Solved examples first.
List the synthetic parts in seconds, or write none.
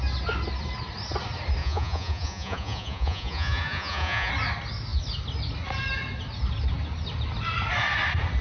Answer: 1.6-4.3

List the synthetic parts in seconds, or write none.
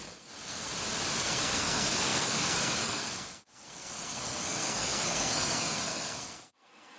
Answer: 0.0-0.7; 1.2-7.0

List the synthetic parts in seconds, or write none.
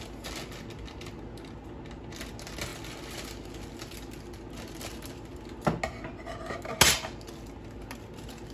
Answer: none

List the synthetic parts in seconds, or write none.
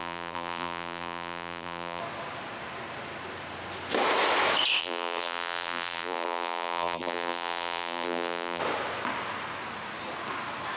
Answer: 0.0-2.0; 4.8-8.6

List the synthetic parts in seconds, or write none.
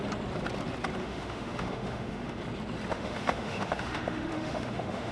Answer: 1.0-2.4; 2.9-5.1